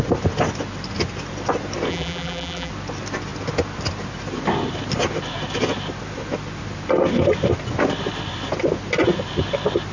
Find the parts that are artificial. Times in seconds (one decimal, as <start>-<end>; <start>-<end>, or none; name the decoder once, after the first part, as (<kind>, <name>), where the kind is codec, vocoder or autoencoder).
1.9-2.7 (vocoder, BigVGAN v2)